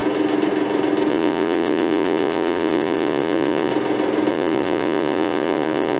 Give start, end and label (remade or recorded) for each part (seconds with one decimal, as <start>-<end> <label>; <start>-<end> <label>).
0.0-1.1 recorded; 1.1-3.7 remade; 3.7-4.3 recorded; 4.3-6.0 remade